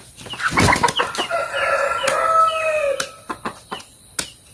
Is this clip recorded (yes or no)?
yes